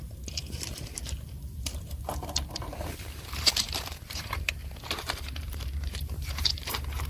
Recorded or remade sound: remade